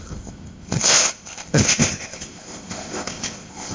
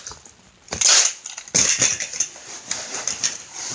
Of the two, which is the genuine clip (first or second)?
second